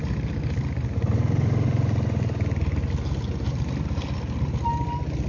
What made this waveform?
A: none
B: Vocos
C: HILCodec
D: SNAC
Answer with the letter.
A